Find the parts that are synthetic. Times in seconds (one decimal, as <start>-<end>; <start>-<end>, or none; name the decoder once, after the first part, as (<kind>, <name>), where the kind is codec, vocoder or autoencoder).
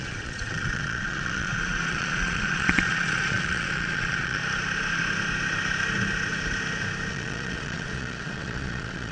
0.0-4.4 (vocoder, Vocos); 7.1-9.1